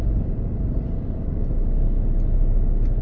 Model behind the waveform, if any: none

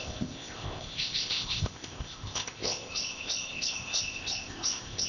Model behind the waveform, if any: codec, ZipCodec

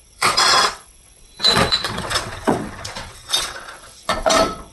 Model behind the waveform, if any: vocoder, WaveNeXt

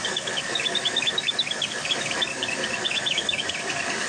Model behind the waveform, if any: codec, DAC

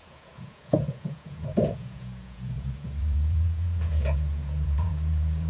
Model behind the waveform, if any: vocoder, Vocos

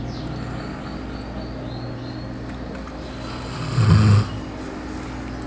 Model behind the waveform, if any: none